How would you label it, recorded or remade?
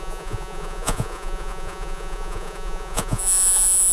remade